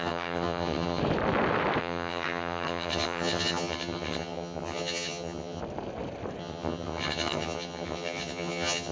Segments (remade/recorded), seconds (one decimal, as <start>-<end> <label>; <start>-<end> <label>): 0.0-1.0 remade; 1.0-1.8 recorded; 1.8-5.6 remade; 5.6-6.4 recorded; 6.4-8.9 remade

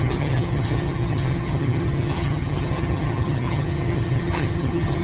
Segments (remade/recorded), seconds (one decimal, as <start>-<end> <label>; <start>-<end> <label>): 0.0-5.0 remade

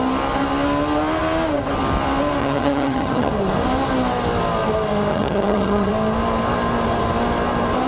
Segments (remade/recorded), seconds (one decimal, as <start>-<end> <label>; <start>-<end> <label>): 0.0-2.4 recorded; 2.4-3.3 remade; 3.3-5.1 recorded; 5.1-5.9 remade; 5.9-7.9 recorded

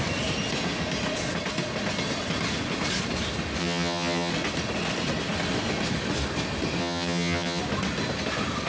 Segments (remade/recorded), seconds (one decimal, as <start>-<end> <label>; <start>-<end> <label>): 0.0-3.6 recorded; 3.6-4.3 remade; 4.3-6.8 recorded; 6.8-7.6 remade; 7.6-8.7 recorded

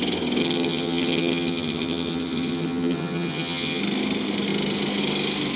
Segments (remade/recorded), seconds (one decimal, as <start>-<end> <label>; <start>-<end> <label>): 0.0-0.4 recorded; 0.4-3.8 remade; 3.8-5.6 recorded

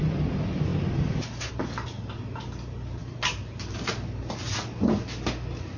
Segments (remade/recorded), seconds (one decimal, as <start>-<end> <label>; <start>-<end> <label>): 0.0-5.8 recorded

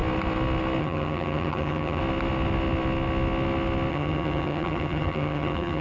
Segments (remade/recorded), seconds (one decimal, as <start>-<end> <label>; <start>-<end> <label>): 0.0-0.8 recorded; 0.8-2.0 remade; 2.0-3.9 recorded; 3.9-5.8 remade

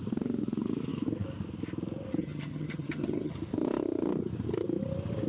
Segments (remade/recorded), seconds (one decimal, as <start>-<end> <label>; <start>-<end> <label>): 0.0-2.2 recorded; 2.2-3.3 remade; 3.3-5.3 recorded